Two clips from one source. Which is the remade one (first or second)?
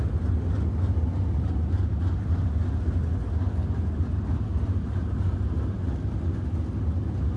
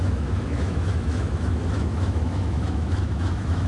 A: second